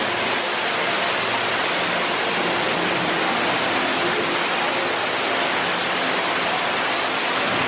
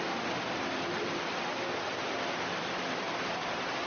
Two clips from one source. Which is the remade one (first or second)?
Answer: second